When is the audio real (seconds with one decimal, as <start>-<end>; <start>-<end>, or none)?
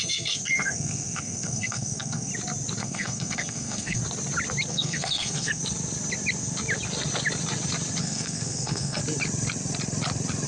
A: 2.3-2.8; 4.0-4.7; 5.6-8.0; 9.0-10.5